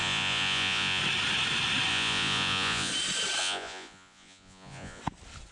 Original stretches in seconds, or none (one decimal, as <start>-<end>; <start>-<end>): 1.0-1.9; 2.9-3.4; 5.0-5.5